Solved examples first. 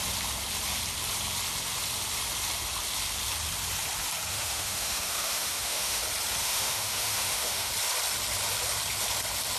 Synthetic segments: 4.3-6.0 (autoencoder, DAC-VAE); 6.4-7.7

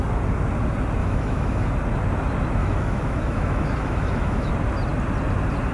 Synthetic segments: 1.0-1.7 (autoencoder, DAC-VAE); 2.6-4.5

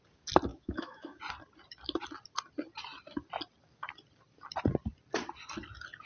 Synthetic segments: 0.5-1.2 (autoencoder, DAC-VAE)

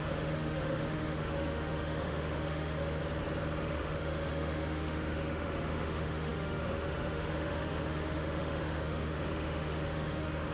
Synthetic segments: 0.0-3.0 (autoencoder, DAC-VAE); 3.6-10.5